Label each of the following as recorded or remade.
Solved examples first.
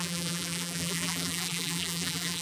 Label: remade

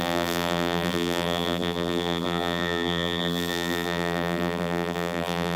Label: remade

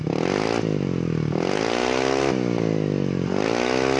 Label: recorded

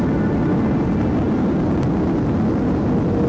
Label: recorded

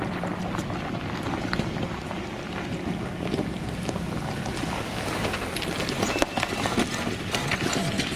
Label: recorded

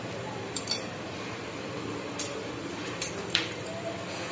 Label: remade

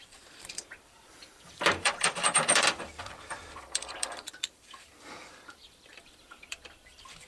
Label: remade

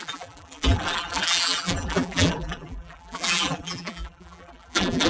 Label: remade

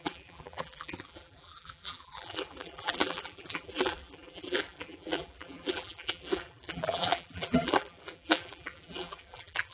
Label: remade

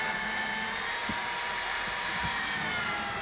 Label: remade